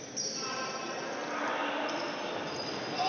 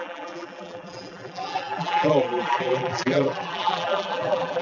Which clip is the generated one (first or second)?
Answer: second